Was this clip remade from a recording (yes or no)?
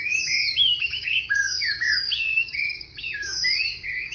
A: yes